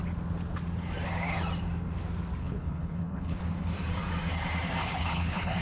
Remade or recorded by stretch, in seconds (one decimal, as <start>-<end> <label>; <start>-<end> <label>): 0.0-2.4 recorded; 2.4-3.4 remade; 3.4-4.8 recorded; 4.8-5.6 remade